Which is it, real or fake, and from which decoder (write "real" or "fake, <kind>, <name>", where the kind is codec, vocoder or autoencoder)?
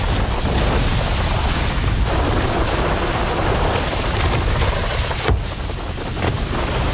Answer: real